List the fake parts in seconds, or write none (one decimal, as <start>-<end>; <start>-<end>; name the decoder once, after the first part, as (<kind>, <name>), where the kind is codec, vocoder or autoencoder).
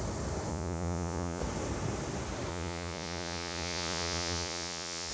0.5-1.4 (vocoder, Vocos); 2.5-5.1